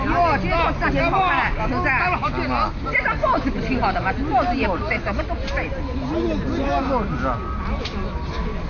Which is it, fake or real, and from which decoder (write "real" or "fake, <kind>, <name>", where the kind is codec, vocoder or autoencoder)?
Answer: real